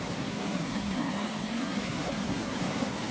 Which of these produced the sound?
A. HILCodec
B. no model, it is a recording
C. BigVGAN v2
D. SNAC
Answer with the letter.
D